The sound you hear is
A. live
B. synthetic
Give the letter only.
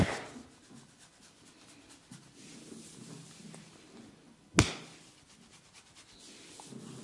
A